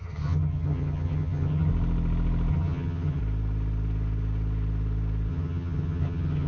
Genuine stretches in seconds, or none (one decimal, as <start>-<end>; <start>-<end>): 1.7-2.5; 3.2-5.3